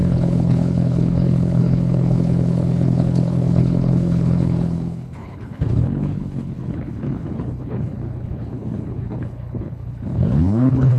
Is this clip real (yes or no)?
no